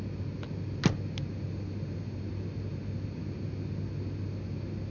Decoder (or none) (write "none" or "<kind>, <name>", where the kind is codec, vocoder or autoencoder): none